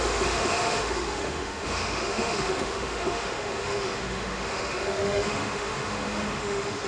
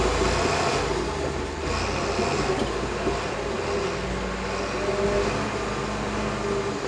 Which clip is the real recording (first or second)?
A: second